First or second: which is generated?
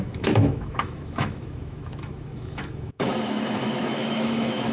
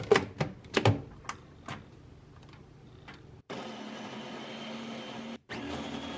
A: first